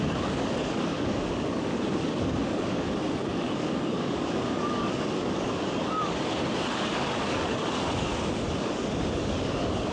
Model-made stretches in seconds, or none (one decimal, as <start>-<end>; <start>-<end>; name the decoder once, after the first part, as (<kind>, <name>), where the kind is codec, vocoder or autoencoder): 0.0-8.1 (codec, DAC); 8.6-9.9